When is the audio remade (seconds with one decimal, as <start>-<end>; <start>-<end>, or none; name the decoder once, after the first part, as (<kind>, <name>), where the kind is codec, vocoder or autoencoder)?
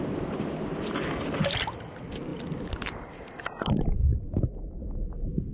none